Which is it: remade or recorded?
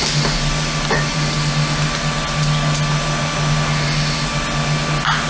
recorded